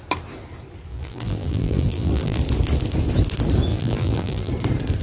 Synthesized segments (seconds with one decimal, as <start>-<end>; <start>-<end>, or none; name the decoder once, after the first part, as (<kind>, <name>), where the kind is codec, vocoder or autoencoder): 0.9-2.4 (vocoder, BigVGAN v2); 3.7-4.5